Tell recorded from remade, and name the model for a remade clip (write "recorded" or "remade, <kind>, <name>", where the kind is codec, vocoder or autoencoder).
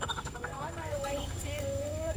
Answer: remade, codec, SNAC